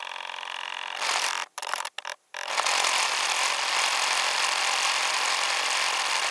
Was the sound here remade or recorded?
recorded